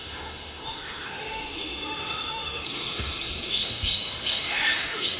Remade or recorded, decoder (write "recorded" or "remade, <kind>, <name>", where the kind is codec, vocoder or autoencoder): remade, autoencoder, DAC-VAE